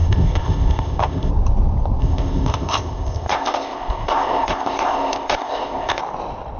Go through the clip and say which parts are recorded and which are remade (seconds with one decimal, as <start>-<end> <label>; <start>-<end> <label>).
0.0-1.3 remade; 1.3-2.0 recorded; 2.0-6.0 remade; 6.0-6.6 recorded